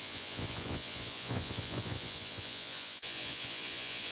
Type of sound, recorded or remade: remade